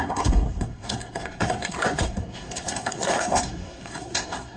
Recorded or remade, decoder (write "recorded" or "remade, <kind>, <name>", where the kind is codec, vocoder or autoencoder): remade, codec, SNAC